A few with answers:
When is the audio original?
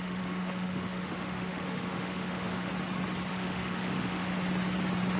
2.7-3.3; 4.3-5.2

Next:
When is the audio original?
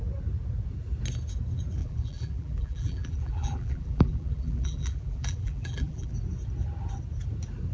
0.0-1.8; 6.1-7.7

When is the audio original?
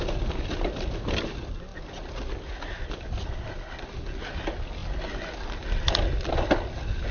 0.0-7.1